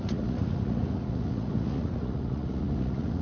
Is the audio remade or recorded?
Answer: remade